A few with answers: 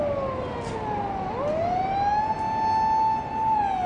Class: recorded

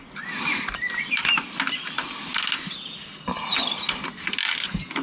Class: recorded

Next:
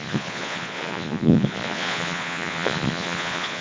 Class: remade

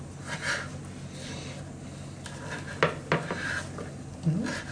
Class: recorded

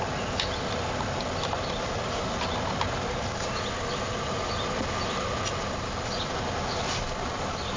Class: recorded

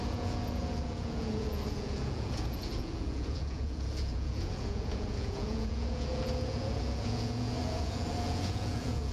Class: remade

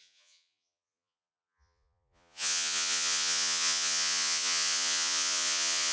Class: remade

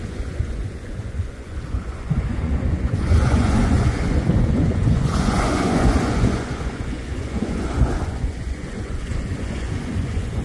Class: remade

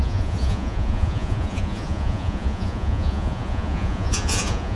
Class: remade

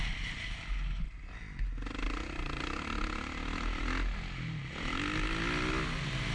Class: recorded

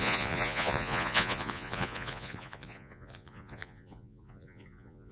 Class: remade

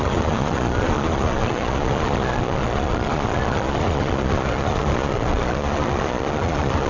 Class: remade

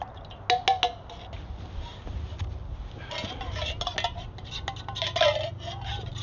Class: recorded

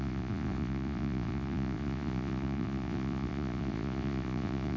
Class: remade